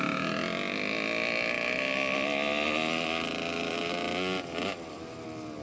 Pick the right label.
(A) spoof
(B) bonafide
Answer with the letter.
B